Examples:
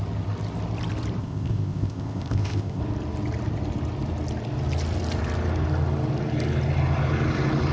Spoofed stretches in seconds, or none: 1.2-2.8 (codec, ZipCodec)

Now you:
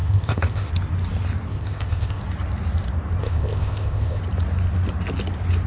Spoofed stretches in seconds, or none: 0.0-0.7 (codec, ZipCodec); 1.5-2.2; 3.2-4.2